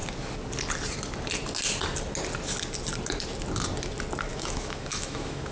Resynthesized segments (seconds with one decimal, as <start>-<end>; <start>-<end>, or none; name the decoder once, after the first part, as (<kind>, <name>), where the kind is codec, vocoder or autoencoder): 4.3-5.5 (autoencoder, DAC-VAE)